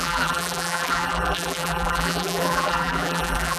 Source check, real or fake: fake